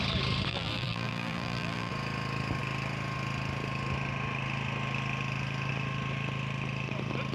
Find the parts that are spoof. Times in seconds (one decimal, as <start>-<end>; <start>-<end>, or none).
0.5-1.9